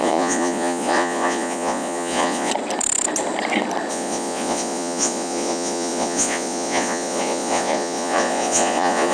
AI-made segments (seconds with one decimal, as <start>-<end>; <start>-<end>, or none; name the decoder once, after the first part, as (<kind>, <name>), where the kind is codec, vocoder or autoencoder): 0.0-2.5 (vocoder, Vocos); 3.9-9.1